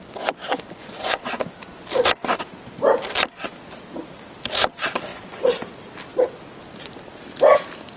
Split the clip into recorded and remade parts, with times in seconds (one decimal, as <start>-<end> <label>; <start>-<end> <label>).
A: 0.0-0.4 recorded; 0.4-1.5 remade; 1.5-5.1 recorded; 5.1-5.7 remade; 5.7-8.0 recorded